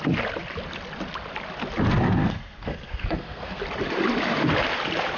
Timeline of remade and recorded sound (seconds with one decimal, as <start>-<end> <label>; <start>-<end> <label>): 0.0-2.2 recorded; 2.2-3.6 remade; 3.6-5.2 recorded